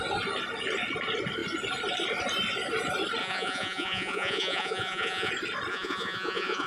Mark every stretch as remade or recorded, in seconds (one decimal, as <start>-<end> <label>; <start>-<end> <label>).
0.0-3.2 recorded; 3.2-5.3 remade; 5.3-5.7 recorded; 5.7-6.7 remade